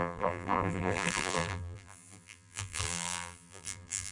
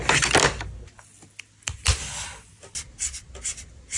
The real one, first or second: second